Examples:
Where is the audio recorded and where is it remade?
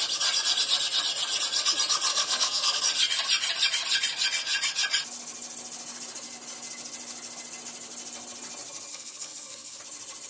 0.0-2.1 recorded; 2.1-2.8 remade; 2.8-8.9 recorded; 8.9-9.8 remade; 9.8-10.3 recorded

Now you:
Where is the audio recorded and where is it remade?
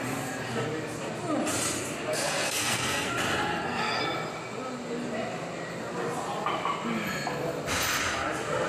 0.0-2.1 recorded; 2.1-3.1 remade; 3.1-3.5 recorded; 3.5-4.0 remade; 4.0-8.7 recorded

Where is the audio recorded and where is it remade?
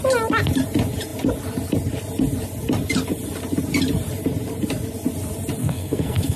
0.0-5.6 recorded; 5.6-6.4 remade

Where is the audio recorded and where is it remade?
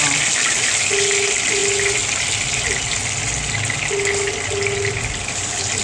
0.0-5.8 recorded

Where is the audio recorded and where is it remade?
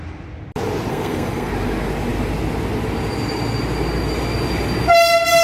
0.0-0.9 recorded; 0.9-1.5 remade; 1.5-5.4 recorded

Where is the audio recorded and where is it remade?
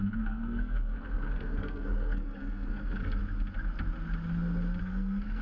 0.0-3.2 remade; 3.2-4.8 recorded; 4.8-5.4 remade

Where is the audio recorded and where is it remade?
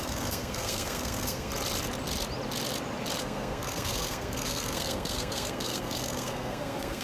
0.0-1.5 remade; 1.5-3.2 recorded; 3.2-7.0 remade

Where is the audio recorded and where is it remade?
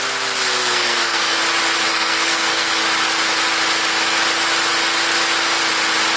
0.0-0.6 recorded; 0.6-1.4 remade; 1.4-1.9 recorded; 1.9-2.8 remade; 2.8-6.2 recorded